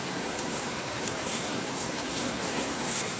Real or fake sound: fake